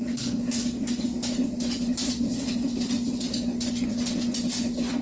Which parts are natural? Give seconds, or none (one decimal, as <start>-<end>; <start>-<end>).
0.0-0.6; 1.3-5.0